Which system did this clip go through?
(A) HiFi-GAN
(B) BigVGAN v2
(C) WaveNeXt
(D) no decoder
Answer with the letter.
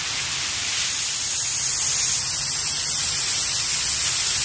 D